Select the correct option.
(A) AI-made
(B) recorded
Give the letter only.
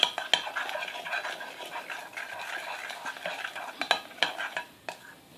B